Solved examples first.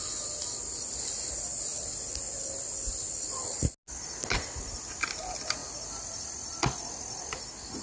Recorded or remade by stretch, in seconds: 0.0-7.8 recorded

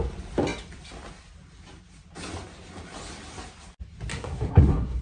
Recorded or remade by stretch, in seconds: 0.0-4.1 recorded; 4.1-5.0 remade

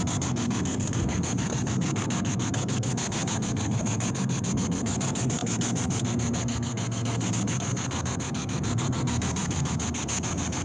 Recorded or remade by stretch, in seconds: 0.0-10.6 remade

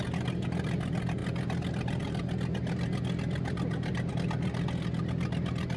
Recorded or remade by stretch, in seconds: 0.0-5.8 recorded

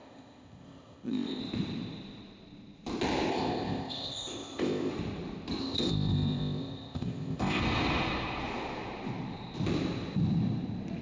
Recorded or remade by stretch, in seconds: 0.0-1.4 remade; 1.4-3.3 recorded; 3.3-4.9 remade; 4.9-5.6 recorded; 5.6-7.6 remade; 7.6-11.0 recorded

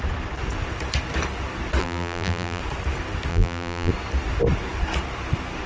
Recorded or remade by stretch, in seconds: 0.0-1.8 recorded; 1.8-2.6 remade; 2.6-3.3 recorded; 3.3-3.9 remade; 3.9-5.7 recorded

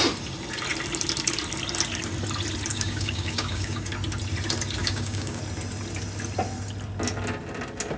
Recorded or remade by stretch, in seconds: 0.0-2.7 recorded; 2.7-3.9 remade; 3.9-4.8 recorded; 4.8-5.4 remade; 5.4-8.0 recorded